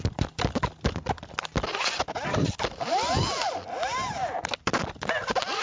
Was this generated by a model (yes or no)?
no